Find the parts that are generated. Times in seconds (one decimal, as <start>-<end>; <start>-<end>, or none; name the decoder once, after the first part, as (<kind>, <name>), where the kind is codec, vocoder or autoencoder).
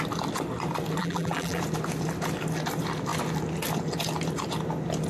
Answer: 1.0-1.6 (vocoder, BigVGAN v2)